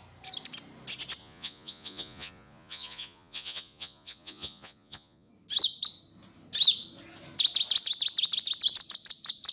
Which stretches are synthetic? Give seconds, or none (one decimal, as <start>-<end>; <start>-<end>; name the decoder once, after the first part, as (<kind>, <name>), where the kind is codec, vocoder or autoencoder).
1.2-5.3 (vocoder, Vocos)